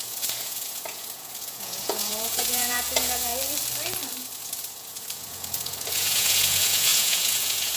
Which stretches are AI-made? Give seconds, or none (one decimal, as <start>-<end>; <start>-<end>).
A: 0.0-3.3; 4.2-7.8